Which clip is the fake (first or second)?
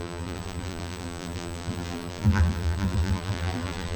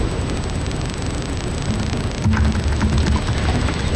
first